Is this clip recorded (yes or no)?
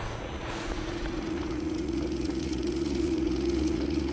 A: no